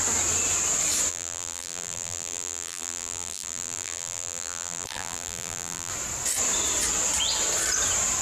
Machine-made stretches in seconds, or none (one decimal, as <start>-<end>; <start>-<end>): 1.1-5.9